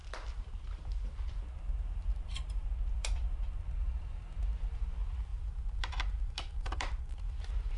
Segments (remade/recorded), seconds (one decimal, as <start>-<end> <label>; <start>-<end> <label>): 0.0-3.6 remade; 3.6-5.3 recorded; 5.3-7.0 remade; 7.0-7.8 recorded